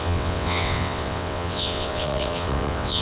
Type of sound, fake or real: fake